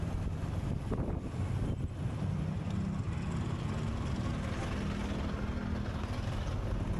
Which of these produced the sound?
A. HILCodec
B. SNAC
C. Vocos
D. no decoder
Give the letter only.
D